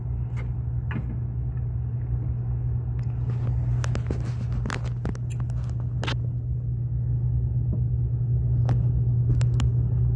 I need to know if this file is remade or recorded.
recorded